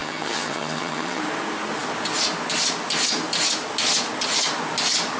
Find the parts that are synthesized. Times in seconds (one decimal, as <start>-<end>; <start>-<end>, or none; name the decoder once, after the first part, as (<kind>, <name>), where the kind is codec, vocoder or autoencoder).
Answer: 0.0-1.2 (vocoder, HiFi-GAN)